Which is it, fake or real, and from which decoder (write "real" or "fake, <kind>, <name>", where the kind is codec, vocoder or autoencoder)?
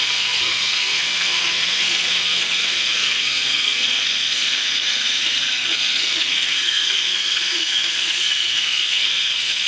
fake, codec, SNAC